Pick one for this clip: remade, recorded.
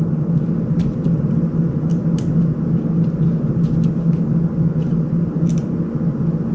recorded